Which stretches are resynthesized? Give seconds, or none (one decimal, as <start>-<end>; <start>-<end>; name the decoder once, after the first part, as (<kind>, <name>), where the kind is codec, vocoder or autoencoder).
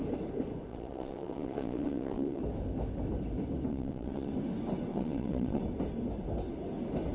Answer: 0.7-2.4 (vocoder, WaveNeXt); 3.7-4.3; 4.9-5.6